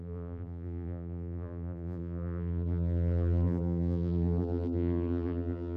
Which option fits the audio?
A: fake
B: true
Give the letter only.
A